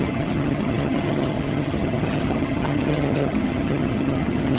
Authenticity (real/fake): fake